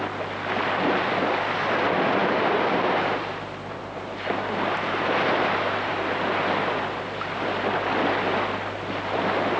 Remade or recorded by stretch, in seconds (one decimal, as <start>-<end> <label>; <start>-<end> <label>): 0.0-2.2 recorded; 2.2-6.3 remade; 6.3-9.6 recorded